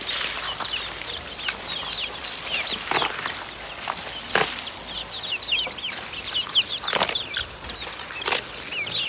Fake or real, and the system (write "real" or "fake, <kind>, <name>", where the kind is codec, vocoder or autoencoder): real